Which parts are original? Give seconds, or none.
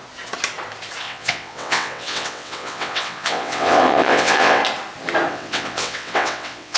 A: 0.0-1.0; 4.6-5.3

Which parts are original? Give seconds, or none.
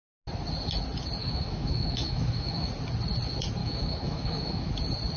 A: 0.0-1.2; 2.7-3.6; 4.7-5.2